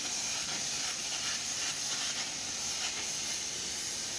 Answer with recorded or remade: recorded